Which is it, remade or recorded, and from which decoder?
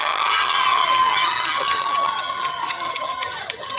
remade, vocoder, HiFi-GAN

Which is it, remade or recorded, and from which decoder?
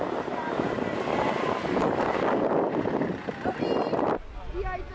recorded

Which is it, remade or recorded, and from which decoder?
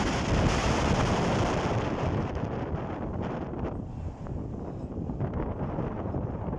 recorded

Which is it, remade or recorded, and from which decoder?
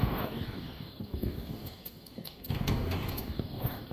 remade, codec, DAC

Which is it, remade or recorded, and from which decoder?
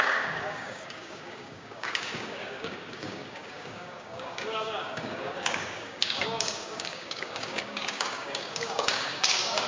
remade, codec, DAC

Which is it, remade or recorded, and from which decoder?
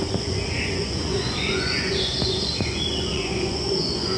remade, vocoder, Vocos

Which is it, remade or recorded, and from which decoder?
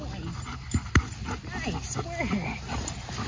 recorded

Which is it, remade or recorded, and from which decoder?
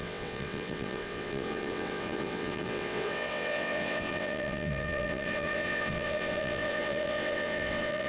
remade, vocoder, WaveNeXt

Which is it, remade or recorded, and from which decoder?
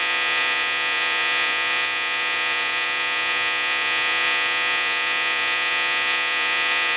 remade, vocoder, Vocos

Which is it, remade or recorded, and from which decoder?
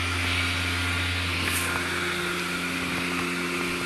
recorded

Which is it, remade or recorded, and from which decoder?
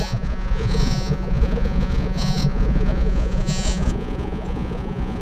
remade, vocoder, Vocos